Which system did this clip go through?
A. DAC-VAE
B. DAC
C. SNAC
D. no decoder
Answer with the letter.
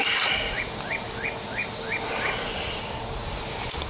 D